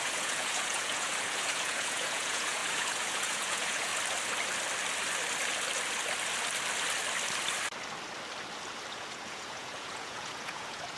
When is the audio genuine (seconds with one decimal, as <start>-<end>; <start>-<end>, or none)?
3.9-8.9